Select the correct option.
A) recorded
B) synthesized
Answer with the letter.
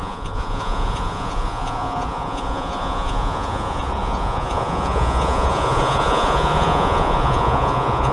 B